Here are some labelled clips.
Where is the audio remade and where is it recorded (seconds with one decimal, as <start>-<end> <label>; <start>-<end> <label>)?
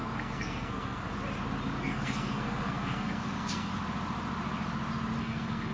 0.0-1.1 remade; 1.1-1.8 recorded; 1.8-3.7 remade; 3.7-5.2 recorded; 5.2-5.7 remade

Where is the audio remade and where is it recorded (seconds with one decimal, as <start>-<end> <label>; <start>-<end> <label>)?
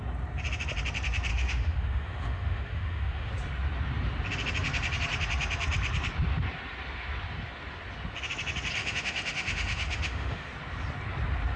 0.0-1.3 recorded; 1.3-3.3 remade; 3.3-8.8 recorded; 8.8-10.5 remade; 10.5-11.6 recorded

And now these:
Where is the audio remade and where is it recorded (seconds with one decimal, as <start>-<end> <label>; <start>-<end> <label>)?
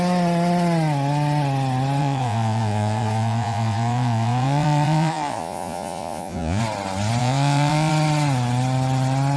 0.0-2.0 recorded; 2.0-6.6 remade; 6.6-7.2 recorded; 7.2-7.9 remade; 7.9-9.4 recorded